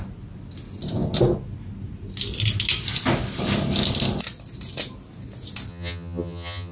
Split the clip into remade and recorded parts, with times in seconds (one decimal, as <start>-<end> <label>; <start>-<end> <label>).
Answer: 0.0-5.7 recorded; 5.7-6.7 remade